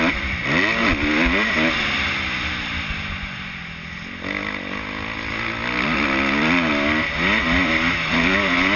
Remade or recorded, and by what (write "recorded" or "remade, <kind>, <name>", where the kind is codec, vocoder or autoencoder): recorded